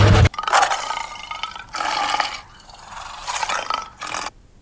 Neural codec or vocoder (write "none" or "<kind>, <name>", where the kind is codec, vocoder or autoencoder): none